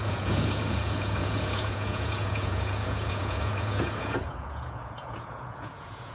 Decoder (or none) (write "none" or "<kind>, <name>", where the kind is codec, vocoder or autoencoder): vocoder, Vocos